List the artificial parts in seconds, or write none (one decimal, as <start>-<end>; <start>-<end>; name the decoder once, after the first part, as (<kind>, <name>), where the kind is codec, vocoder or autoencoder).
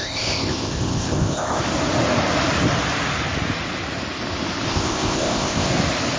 0.0-1.6 (codec, ZipCodec); 4.7-5.7